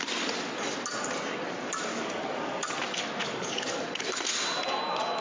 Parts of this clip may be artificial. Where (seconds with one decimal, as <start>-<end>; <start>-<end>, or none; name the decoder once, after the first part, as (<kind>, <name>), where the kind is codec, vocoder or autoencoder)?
1.9-2.7 (codec, DAC); 3.2-3.7